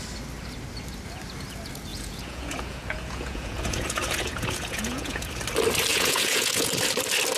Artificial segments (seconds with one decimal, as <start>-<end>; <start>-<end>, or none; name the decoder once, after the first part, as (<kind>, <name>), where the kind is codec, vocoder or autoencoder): 1.9-5.3 (vocoder, Vocos); 5.9-6.7